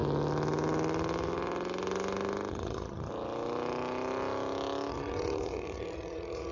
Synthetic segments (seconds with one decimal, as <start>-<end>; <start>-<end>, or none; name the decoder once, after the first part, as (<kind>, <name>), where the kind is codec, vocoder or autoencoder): 2.5-3.1 (vocoder, HiFi-GAN); 4.9-6.5